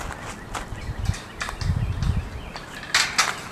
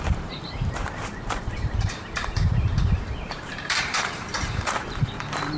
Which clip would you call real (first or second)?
first